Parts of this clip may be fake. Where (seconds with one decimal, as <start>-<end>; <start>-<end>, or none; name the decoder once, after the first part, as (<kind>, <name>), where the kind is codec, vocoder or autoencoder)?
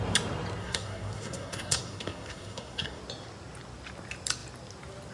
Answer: 0.6-3.0 (codec, SNAC)